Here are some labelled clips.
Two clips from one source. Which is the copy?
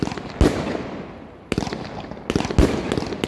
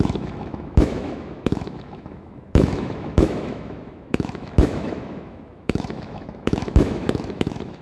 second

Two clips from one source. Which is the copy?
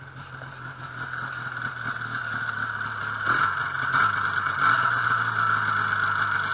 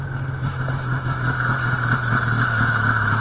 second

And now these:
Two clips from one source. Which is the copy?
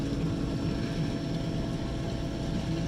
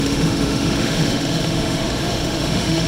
second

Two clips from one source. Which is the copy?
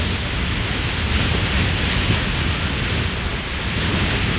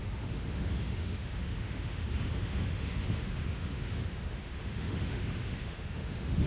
second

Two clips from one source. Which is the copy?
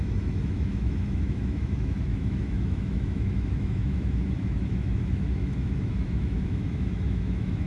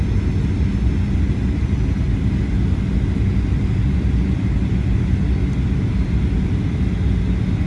first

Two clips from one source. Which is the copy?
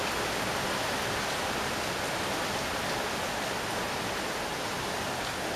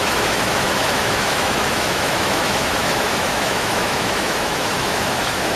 second